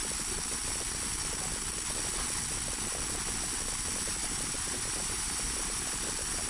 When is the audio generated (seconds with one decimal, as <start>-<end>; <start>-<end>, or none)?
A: 4.2-5.8